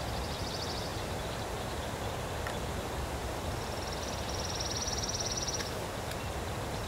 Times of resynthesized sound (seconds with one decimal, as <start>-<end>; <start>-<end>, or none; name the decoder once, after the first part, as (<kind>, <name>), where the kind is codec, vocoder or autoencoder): 0.9-1.9 (vocoder, BigVGAN v2)

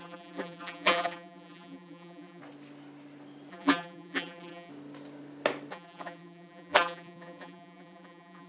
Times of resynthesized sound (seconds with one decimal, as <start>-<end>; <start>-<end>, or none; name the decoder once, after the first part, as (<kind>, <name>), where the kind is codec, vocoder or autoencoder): 0.0-2.4 (vocoder, BigVGAN v2); 3.5-4.7; 5.7-8.5

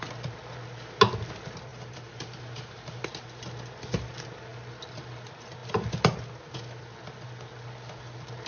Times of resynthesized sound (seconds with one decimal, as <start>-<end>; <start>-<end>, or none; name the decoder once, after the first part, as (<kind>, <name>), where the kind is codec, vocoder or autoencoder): 1.7-3.0 (vocoder, BigVGAN v2)

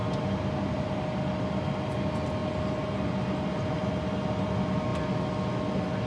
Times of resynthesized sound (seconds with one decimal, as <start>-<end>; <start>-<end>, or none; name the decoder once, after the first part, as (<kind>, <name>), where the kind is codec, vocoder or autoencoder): none

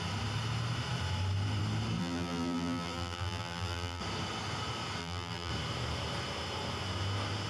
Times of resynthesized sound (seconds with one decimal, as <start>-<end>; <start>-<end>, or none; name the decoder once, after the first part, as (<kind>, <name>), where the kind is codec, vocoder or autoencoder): 2.0-4.0 (vocoder, BigVGAN v2); 5.0-5.5

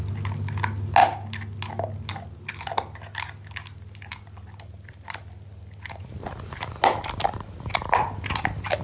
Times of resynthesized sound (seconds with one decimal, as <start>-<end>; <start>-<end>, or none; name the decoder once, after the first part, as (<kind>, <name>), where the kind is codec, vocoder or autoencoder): none

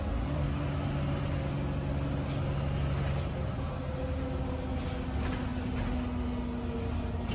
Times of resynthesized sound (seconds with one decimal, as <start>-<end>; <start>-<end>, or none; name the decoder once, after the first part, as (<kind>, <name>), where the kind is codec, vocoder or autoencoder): none

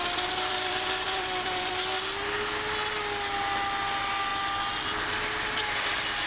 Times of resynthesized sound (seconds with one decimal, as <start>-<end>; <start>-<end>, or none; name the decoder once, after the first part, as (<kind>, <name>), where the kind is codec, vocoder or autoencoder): 0.0-1.7 (vocoder, BigVGAN v2)